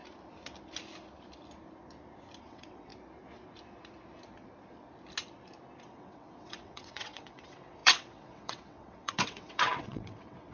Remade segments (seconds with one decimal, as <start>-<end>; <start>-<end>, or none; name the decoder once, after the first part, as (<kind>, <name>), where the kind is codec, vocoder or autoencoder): 2.4-2.9 (vocoder, WaveNeXt); 5.8-10.5